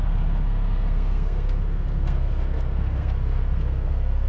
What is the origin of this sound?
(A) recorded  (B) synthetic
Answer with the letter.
B